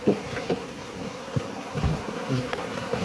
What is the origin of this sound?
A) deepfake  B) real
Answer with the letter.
A